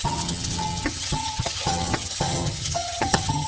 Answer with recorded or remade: remade